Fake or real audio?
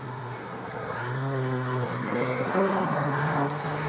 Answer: fake